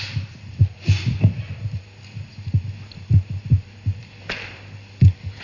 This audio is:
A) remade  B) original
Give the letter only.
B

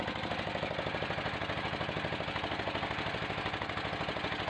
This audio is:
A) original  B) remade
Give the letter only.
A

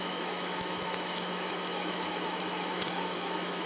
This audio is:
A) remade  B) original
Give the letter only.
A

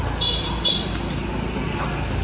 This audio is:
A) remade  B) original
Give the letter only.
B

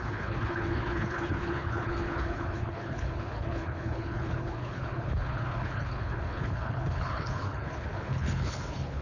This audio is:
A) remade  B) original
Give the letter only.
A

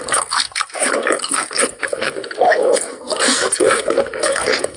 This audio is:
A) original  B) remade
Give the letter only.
B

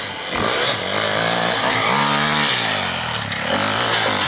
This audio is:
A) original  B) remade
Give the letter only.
A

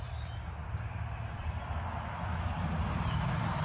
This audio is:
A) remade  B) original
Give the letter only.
A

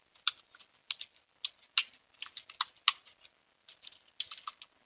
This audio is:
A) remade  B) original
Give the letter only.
B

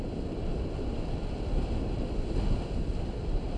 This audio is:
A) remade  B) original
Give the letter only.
A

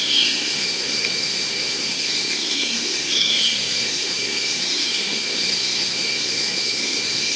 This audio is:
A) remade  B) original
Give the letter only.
A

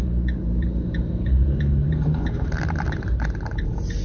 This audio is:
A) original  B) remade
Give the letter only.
B